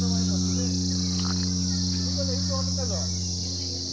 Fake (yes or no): no